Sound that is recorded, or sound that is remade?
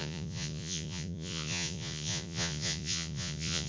remade